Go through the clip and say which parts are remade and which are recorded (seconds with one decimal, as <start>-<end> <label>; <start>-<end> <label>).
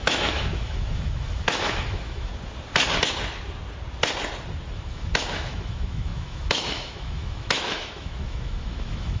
0.0-2.3 remade; 2.3-4.7 recorded; 4.7-9.2 remade